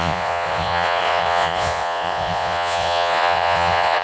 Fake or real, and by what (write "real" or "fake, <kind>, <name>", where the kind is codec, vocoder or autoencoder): fake, vocoder, Vocos